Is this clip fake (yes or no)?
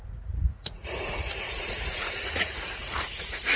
yes